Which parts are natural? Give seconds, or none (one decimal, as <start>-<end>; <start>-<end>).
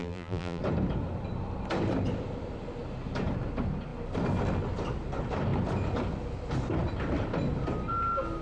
0.6-8.4